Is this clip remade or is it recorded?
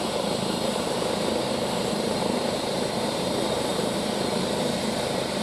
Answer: remade